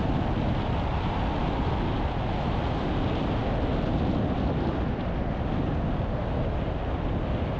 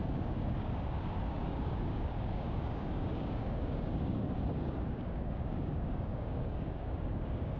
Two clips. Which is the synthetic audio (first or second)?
second